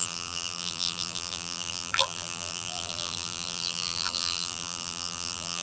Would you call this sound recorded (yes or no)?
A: no